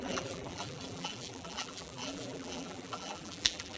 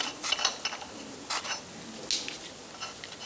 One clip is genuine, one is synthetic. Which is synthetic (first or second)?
first